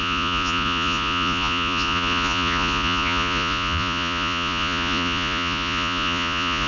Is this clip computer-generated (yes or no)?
yes